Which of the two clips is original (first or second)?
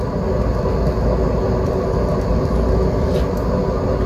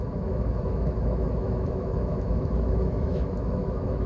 first